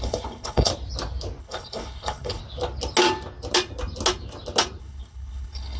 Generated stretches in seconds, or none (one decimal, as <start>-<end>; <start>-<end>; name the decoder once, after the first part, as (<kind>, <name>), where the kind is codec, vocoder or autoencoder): 0.0-0.7 (codec, HILCodec); 1.4-2.4; 4.8-5.8